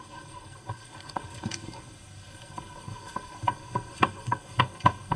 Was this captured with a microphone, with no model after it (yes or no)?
no